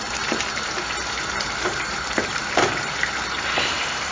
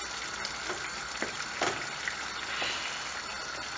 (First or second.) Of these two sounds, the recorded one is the second